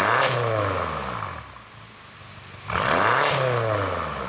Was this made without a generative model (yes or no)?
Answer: yes